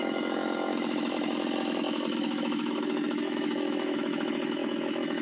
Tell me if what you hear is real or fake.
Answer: fake